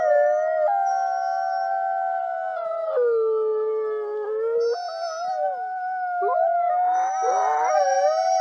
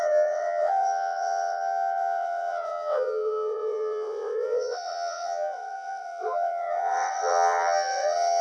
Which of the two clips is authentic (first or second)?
first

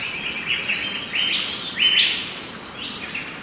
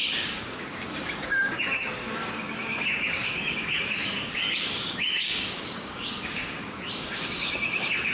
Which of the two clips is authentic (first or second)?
first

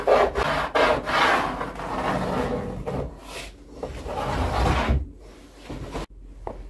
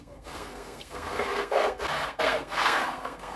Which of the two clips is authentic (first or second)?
first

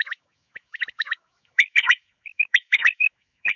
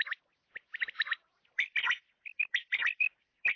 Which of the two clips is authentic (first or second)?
second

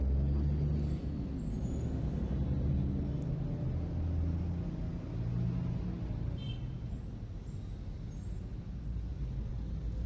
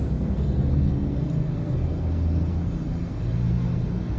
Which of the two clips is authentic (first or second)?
first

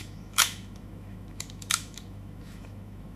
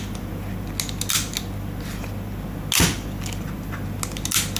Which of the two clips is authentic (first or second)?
second